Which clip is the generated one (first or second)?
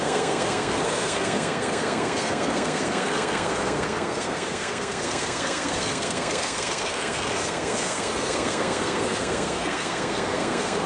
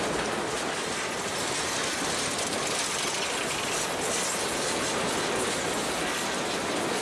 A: first